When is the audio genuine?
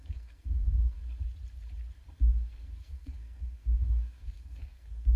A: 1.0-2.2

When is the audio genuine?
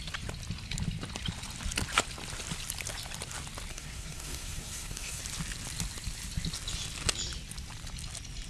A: 0.0-3.7; 5.2-8.5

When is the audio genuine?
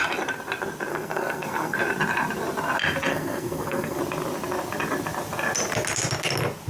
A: 0.0-0.9; 1.8-3.1; 4.0-6.7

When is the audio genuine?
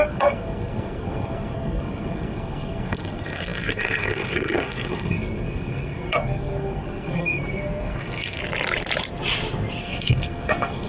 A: 8.4-9.8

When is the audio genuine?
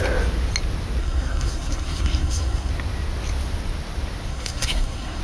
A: 0.0-1.0; 2.7-4.3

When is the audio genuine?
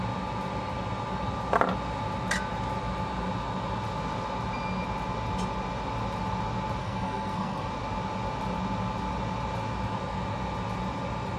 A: 0.0-6.8; 7.7-11.4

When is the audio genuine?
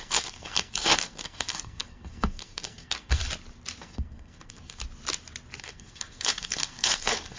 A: 3.2-3.8; 4.8-5.6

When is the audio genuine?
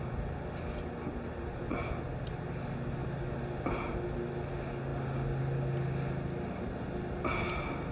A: 0.0-7.9